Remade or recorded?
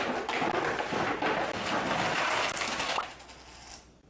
recorded